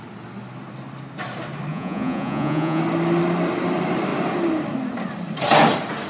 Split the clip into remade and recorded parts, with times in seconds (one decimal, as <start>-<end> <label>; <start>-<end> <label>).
0.0-1.7 recorded; 1.7-2.8 remade; 2.8-6.1 recorded

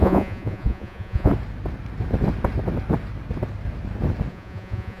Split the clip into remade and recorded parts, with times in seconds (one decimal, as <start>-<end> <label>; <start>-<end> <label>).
0.0-1.3 remade; 1.3-4.3 recorded; 4.3-5.0 remade

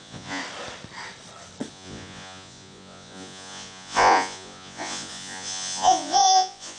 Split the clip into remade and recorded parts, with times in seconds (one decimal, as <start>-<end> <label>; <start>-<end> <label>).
0.0-0.4 remade; 0.4-1.7 recorded; 1.7-6.8 remade

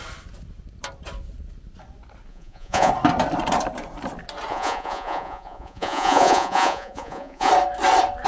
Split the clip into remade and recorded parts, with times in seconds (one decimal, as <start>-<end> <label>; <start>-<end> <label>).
0.0-2.3 recorded; 2.3-2.9 remade; 2.9-4.5 recorded; 4.5-7.5 remade; 7.5-8.3 recorded

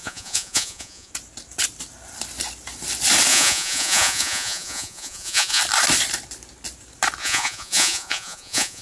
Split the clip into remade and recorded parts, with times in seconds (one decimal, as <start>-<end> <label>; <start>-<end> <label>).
0.0-1.1 remade; 1.1-3.3 recorded; 3.3-5.6 remade; 5.6-7.2 recorded; 7.2-8.8 remade